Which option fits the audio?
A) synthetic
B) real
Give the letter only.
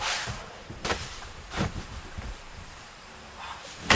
A